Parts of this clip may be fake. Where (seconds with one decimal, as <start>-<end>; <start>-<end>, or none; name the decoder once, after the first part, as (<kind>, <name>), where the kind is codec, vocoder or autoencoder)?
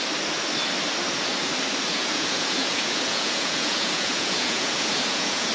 1.9-5.5 (vocoder, Vocos)